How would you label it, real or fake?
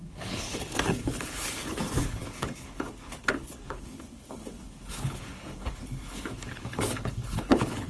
fake